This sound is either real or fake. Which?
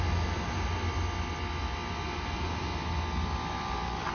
real